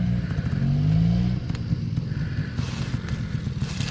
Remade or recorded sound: recorded